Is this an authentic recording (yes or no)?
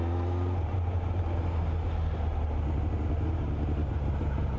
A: yes